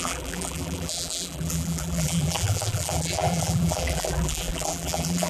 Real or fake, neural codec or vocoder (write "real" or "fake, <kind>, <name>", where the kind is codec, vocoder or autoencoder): fake, vocoder, BigVGAN v2